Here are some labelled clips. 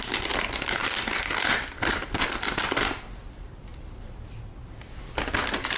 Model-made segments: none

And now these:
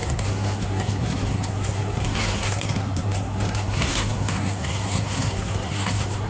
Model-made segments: 0.0-6.3 (codec, SNAC)

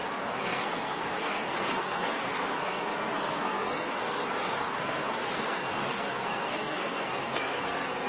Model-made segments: 0.0-8.1 (codec, SNAC)

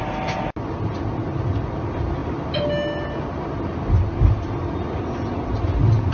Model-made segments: 1.2-1.8 (vocoder, BigVGAN v2)

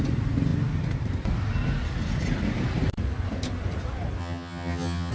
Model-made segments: 4.2-5.1 (vocoder, HiFi-GAN)